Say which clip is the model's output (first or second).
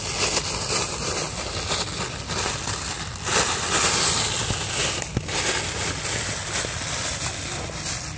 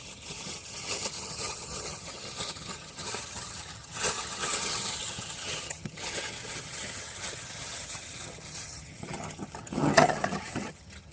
second